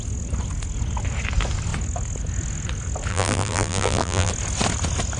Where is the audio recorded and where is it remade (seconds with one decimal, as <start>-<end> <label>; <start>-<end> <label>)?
0.0-3.1 recorded; 3.1-4.3 remade; 4.3-5.2 recorded